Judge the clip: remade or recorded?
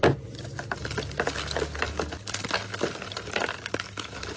recorded